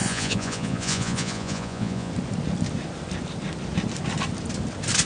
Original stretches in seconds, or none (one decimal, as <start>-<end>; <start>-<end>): 2.1-5.1